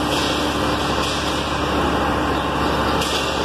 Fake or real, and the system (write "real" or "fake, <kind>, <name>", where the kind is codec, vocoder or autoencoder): real